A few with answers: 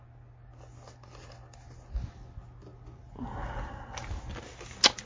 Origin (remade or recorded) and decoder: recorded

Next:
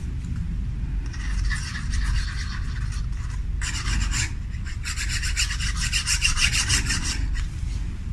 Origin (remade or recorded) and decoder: recorded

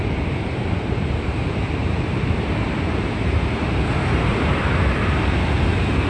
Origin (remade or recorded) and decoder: remade, vocoder, BigVGAN v2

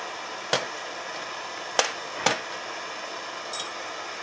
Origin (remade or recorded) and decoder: recorded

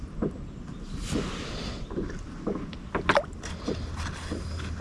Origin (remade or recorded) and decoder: recorded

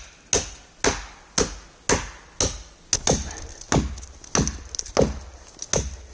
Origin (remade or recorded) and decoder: recorded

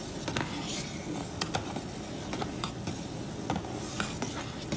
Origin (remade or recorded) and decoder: recorded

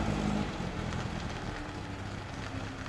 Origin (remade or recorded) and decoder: recorded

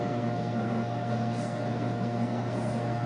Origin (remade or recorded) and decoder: remade, codec, SNAC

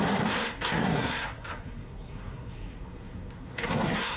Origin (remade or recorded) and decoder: remade, codec, SNAC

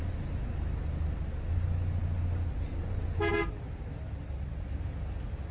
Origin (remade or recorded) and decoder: recorded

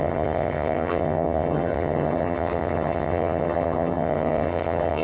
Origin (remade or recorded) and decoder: remade, vocoder, HiFi-GAN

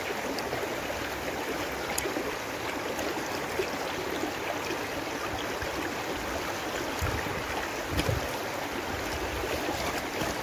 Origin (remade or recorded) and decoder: recorded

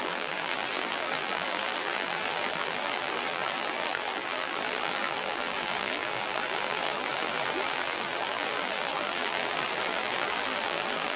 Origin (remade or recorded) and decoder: remade, vocoder, BigVGAN v2